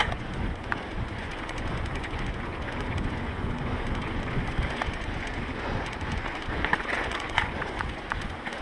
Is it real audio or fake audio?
fake